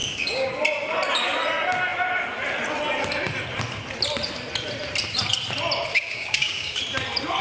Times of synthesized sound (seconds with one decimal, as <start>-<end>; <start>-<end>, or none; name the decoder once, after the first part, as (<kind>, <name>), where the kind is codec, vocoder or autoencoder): 0.0-0.5 (codec, DAC); 5.9-6.8